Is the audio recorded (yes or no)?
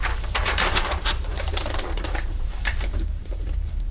no